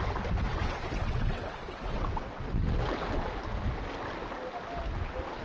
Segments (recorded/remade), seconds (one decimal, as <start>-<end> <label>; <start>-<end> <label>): 0.0-0.5 recorded; 0.5-3.3 remade; 3.3-5.4 recorded